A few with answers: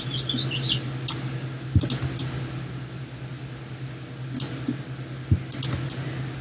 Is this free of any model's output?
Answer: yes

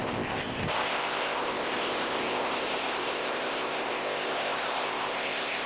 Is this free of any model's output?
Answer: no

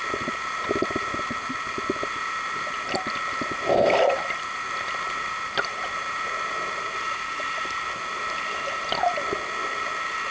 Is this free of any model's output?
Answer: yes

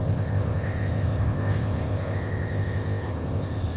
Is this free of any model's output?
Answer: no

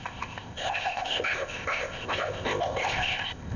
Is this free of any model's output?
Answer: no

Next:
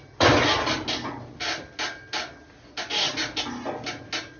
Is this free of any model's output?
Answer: yes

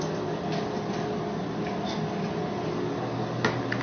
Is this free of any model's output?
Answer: yes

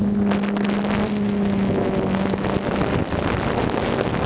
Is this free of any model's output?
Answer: yes